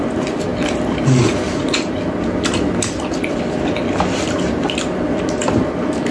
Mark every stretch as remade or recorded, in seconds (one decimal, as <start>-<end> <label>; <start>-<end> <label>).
0.0-6.1 recorded